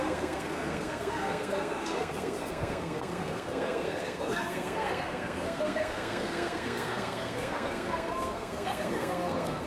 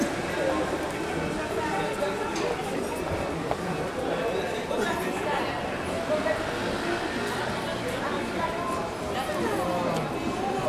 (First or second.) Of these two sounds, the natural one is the second